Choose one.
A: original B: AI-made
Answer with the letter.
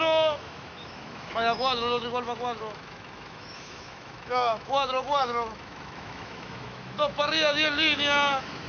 B